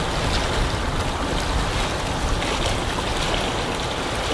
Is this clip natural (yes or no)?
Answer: yes